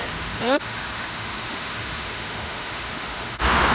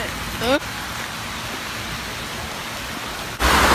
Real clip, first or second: second